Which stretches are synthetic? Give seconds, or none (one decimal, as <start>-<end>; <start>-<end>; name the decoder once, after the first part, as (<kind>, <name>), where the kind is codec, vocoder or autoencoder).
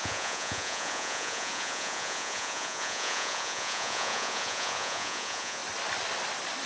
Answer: 0.0-5.6 (vocoder, Vocos)